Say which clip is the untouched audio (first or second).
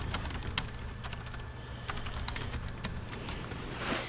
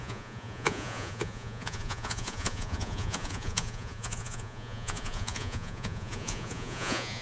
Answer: first